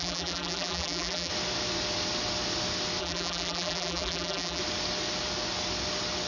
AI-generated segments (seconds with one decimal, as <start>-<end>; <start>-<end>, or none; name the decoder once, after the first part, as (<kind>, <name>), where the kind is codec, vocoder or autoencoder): 0.0-1.3 (vocoder, BigVGAN v2); 3.0-4.6